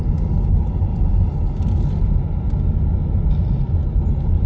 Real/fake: real